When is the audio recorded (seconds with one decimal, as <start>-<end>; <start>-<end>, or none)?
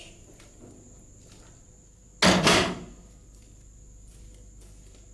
0.0-5.1